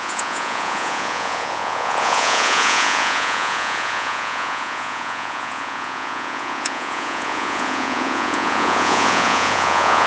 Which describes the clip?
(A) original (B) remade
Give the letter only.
B